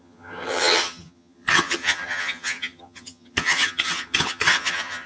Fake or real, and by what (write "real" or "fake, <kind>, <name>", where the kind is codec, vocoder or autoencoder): fake, vocoder, HiFi-GAN